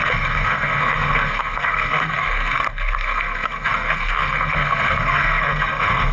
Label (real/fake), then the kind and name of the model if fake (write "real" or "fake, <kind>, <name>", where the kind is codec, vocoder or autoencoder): fake, codec, SNAC